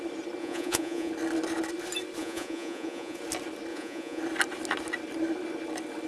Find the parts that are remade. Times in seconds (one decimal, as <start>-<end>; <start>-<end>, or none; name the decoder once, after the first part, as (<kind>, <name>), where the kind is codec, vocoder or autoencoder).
0.4-1.1 (vocoder, Vocos); 2.2-3.2; 3.7-4.2